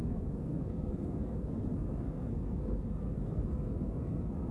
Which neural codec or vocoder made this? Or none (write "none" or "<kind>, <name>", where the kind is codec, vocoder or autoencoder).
codec, SNAC